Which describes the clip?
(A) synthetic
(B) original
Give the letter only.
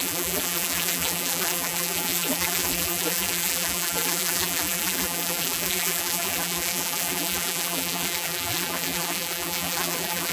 A